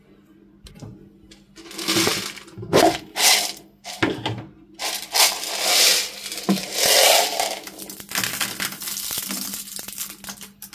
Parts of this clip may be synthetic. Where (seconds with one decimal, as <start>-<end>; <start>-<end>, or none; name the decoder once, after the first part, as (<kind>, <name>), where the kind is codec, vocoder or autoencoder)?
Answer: none